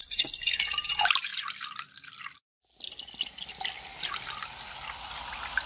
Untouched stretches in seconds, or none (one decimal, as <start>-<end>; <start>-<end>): 0.9-5.7